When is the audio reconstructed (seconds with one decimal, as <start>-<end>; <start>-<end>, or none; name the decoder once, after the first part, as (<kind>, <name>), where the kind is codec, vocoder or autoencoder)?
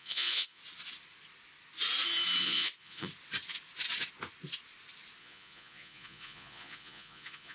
0.0-0.6 (vocoder, Vocos); 2.4-3.1; 5.2-7.5